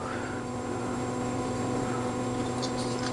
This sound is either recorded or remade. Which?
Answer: remade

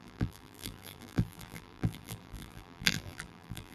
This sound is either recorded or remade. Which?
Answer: remade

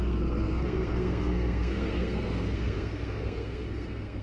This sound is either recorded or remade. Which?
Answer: remade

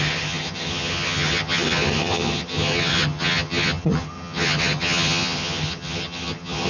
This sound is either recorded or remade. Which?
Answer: remade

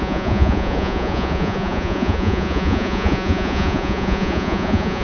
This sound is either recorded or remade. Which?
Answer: remade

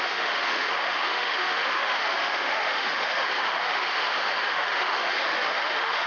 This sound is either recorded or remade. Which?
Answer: remade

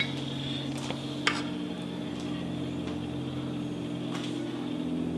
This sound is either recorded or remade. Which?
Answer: recorded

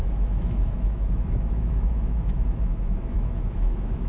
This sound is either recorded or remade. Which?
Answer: remade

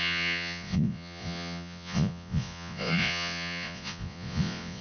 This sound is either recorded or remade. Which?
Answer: remade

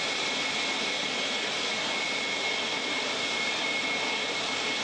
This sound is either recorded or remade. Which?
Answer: recorded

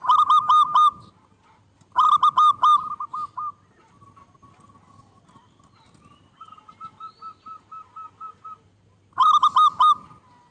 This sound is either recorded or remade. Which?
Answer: recorded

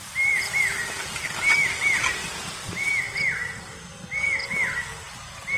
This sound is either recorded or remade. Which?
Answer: recorded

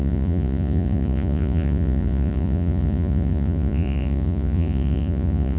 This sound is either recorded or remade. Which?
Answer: remade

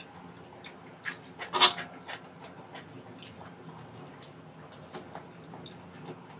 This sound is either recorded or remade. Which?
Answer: recorded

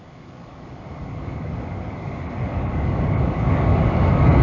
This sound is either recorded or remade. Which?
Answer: remade